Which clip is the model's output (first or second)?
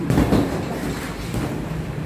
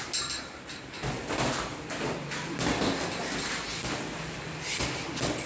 first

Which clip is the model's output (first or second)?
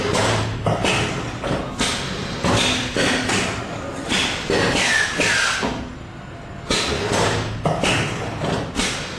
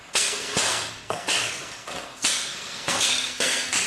second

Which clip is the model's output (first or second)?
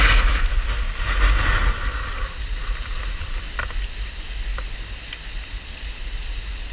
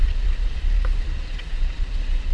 second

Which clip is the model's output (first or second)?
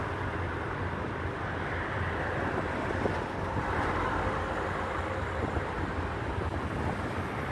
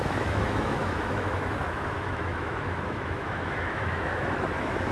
second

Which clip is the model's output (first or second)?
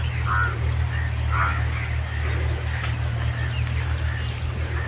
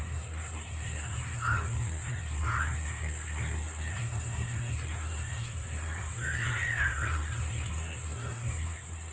second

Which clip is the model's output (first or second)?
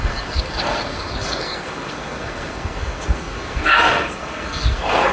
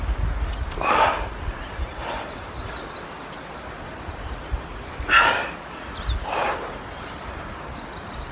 first